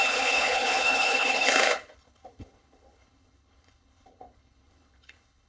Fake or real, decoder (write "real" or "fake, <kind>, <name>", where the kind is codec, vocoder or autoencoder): fake, codec, HILCodec